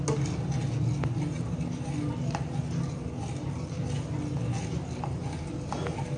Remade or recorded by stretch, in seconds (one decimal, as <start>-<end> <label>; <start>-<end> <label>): 0.0-6.2 recorded